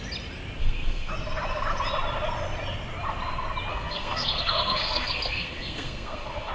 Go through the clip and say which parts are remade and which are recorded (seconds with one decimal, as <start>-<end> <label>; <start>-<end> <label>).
0.0-0.6 recorded; 0.6-1.1 remade; 1.1-3.7 recorded; 3.7-6.5 remade